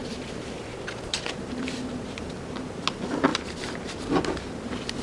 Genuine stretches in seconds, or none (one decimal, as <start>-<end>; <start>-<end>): 0.0-0.7; 2.3-3.3; 4.4-5.0